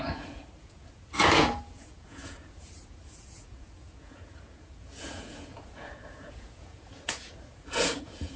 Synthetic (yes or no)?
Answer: yes